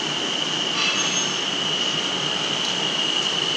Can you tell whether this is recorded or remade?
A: recorded